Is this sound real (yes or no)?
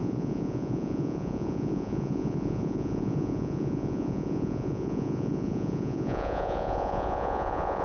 no